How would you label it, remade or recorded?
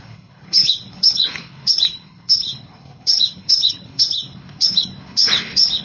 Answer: remade